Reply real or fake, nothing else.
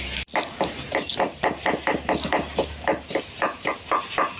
real